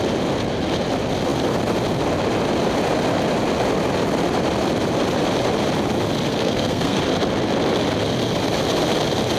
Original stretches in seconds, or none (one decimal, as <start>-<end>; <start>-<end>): 0.0-6.3; 7.0-9.4